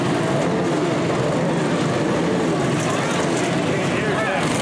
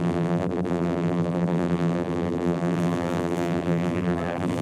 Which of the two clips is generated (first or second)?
second